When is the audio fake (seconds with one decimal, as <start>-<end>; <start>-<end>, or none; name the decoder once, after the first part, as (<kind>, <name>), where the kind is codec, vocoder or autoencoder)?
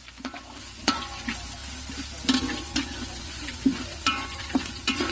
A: 0.0-1.6 (vocoder, Vocos); 2.4-5.1